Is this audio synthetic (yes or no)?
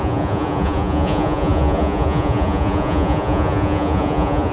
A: yes